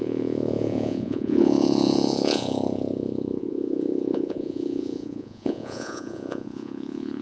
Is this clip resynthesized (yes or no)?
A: yes